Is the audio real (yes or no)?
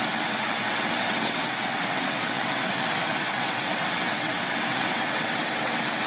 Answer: no